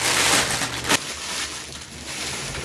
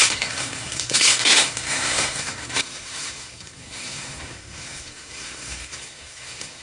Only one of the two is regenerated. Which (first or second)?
second